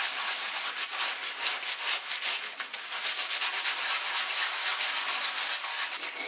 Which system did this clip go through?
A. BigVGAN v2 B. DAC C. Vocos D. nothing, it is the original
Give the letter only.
D